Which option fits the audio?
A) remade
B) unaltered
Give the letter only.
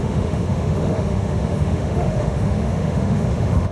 A